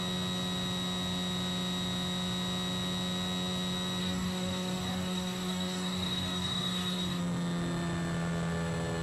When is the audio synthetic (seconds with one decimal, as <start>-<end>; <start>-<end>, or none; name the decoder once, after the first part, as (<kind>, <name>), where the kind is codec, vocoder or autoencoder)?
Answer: 4.0-7.2 (codec, DAC)

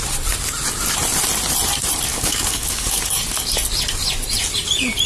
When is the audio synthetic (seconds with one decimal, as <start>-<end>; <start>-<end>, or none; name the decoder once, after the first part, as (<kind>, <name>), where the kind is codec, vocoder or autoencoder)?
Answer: 2.1-3.0 (codec, DAC)

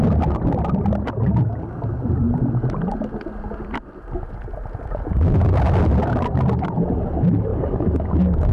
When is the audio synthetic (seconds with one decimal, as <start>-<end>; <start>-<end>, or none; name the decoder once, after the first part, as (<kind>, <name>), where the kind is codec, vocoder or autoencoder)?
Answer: 7.5-8.5 (codec, DAC)

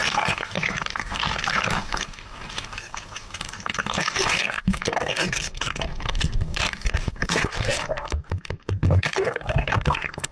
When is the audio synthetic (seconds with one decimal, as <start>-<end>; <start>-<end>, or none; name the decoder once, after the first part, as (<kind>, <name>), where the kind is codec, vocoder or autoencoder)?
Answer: 0.0-10.3 (codec, DAC)

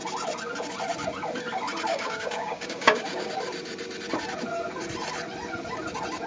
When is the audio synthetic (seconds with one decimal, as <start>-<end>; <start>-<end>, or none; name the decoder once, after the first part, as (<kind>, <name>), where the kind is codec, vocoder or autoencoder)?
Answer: 1.9-3.3 (codec, DAC)

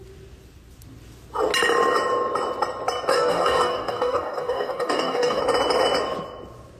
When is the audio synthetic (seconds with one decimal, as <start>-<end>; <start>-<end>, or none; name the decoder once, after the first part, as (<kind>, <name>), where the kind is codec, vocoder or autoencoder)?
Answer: 3.1-5.4 (codec, DAC)

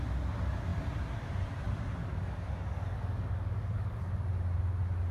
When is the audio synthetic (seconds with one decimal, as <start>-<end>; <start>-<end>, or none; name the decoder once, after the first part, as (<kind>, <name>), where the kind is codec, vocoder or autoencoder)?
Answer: 2.0-4.0 (codec, DAC)

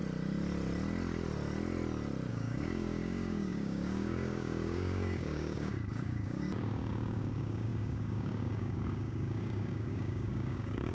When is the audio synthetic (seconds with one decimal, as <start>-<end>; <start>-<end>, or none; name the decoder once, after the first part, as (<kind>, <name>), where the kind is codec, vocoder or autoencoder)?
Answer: 2.3-10.9 (codec, DAC)